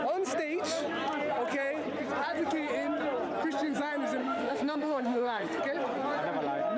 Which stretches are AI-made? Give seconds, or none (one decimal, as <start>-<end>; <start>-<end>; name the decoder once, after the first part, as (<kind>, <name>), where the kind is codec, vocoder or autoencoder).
4.2-5.6 (autoencoder, DAC-VAE)